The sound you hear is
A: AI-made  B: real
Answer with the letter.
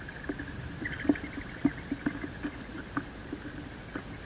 B